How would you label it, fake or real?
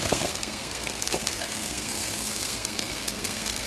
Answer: fake